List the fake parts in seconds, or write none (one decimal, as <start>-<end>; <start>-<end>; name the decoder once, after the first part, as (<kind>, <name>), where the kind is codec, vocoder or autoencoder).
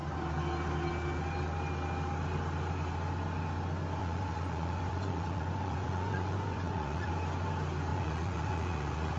4.0-7.1 (vocoder, Vocos); 7.9-9.2